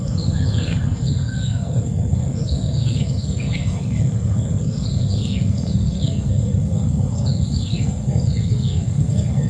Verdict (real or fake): fake